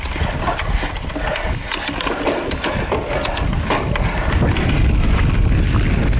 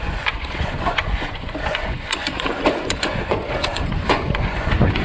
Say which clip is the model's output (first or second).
second